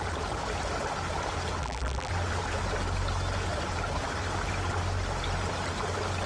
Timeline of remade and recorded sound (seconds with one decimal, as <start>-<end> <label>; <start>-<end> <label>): 0.0-1.6 recorded; 1.6-2.1 remade; 2.1-6.3 recorded